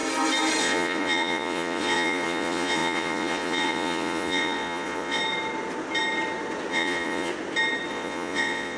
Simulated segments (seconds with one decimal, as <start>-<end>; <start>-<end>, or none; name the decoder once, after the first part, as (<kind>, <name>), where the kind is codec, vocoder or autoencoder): 0.6-5.2 (vocoder, Vocos); 6.7-7.3; 7.9-8.8